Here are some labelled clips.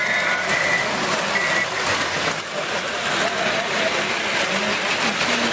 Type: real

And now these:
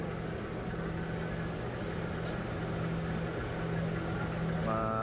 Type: real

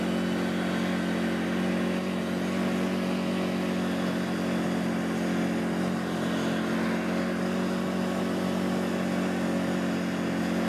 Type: real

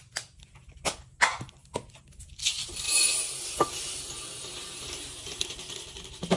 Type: real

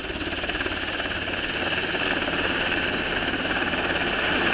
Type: real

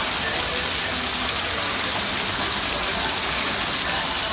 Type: real